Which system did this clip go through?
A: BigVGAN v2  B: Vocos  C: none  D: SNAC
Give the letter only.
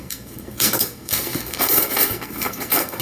D